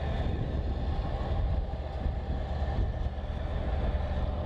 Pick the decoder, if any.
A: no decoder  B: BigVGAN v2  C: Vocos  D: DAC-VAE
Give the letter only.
A